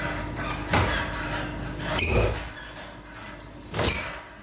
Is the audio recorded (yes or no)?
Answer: yes